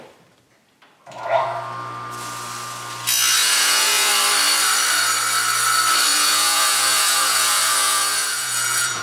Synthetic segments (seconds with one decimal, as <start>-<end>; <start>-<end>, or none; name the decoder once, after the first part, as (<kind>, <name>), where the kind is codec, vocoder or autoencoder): 3.4-4.1 (vocoder, Vocos); 6.1-9.0

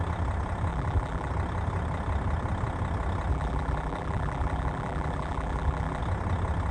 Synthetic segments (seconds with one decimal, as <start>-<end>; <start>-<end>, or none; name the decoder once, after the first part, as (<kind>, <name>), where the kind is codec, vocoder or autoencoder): 0.7-1.3 (vocoder, BigVGAN v2); 3.3-6.0

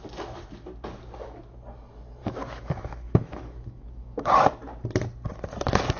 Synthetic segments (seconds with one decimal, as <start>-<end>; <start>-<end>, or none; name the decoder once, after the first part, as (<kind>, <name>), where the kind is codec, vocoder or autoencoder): 2.2-4.3 (autoencoder, DAC-VAE)

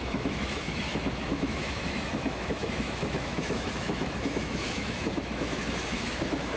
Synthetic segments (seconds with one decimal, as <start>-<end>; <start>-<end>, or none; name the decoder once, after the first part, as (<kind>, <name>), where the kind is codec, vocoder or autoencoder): 0.0-6.6 (autoencoder, DAC-VAE)

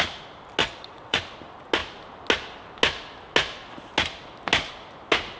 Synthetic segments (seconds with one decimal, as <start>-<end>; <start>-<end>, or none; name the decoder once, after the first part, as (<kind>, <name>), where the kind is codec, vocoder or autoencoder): 0.6-1.2 (vocoder, WaveNeXt)

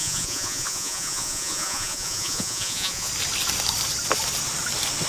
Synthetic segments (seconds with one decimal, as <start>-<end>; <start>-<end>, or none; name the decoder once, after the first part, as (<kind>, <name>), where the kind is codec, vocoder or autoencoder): 0.0-3.1 (vocoder, Vocos)

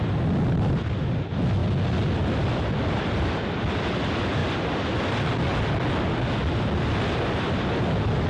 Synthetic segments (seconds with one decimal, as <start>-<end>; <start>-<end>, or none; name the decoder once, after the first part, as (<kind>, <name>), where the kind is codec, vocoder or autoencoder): none